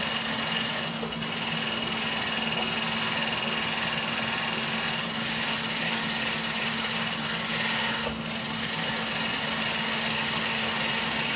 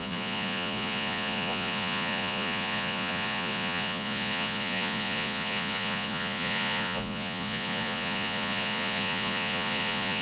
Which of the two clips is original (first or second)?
first